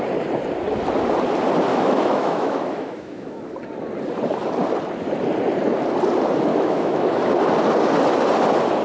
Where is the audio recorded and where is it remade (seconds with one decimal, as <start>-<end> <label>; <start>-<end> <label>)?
0.0-1.7 recorded; 1.7-3.4 remade; 3.4-6.5 recorded; 6.5-7.2 remade; 7.2-8.8 recorded